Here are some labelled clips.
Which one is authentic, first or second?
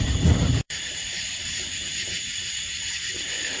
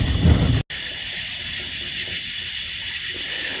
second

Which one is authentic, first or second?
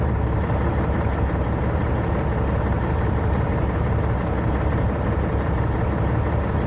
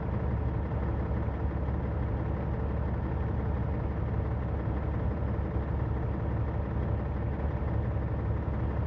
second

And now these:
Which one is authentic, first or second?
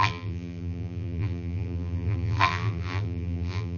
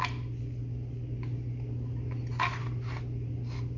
second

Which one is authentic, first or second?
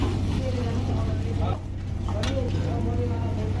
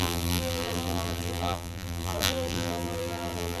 first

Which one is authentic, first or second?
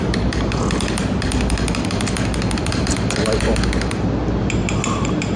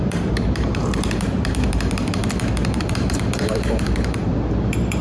first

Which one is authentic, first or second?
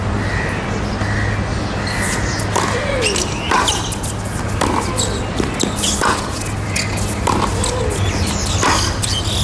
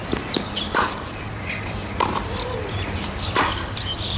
first